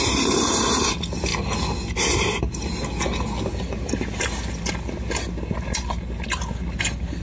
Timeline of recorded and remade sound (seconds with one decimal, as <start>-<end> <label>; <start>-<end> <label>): 0.0-7.2 recorded